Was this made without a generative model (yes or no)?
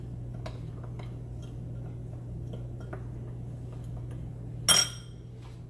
yes